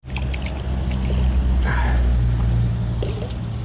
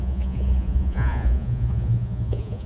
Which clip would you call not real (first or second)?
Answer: second